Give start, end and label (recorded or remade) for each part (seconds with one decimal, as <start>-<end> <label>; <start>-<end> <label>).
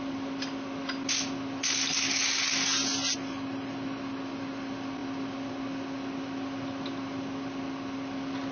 0.0-8.5 recorded